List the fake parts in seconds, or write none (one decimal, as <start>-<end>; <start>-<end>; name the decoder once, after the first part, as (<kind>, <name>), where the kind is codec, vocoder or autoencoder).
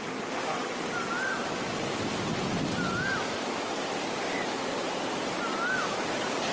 none